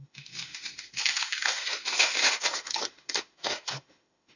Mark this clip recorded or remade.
remade